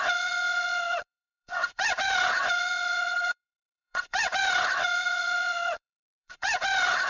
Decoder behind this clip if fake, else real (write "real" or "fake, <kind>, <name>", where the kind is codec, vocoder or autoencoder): fake, vocoder, WaveNeXt